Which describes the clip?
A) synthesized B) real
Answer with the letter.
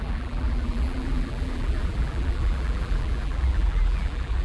A